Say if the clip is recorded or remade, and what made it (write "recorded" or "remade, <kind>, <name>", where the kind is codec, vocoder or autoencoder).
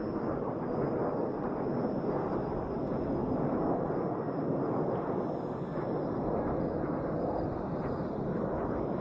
recorded